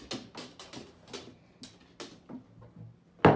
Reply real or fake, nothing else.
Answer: real